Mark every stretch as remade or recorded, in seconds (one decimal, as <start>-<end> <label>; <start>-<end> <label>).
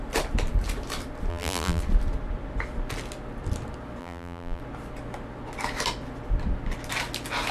0.0-1.3 recorded; 1.3-1.8 remade; 1.8-4.0 recorded; 4.0-4.6 remade; 4.6-7.5 recorded